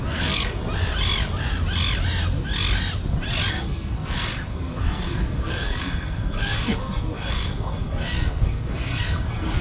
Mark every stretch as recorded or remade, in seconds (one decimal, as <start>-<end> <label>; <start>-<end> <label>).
0.0-0.6 remade; 0.6-3.5 recorded; 3.5-9.6 remade